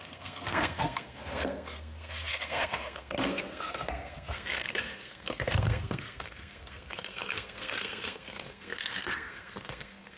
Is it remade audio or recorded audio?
remade